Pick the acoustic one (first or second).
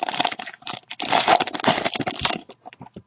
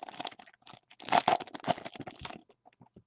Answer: second